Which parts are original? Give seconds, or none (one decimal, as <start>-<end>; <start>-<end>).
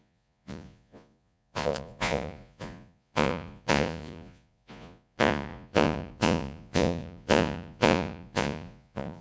none